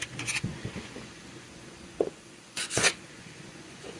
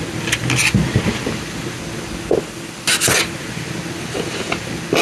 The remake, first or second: first